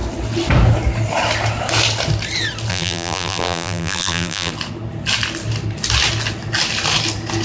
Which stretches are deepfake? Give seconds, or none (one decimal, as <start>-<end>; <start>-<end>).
2.7-4.5